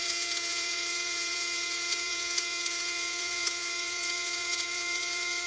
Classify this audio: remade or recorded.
remade